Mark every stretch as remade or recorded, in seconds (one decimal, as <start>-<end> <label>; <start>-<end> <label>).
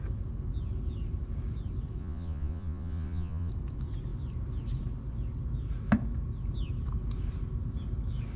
0.0-2.0 recorded; 2.0-3.5 remade; 3.5-8.4 recorded